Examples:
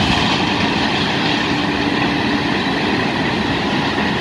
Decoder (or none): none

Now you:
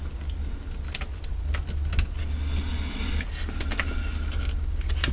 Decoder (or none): none